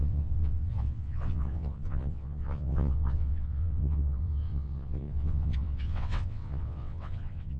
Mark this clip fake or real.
fake